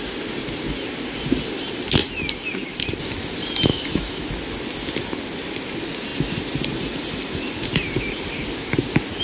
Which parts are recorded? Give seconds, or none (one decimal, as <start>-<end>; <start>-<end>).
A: 0.0-3.7; 4.3-9.2